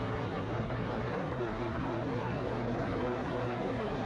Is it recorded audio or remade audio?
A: remade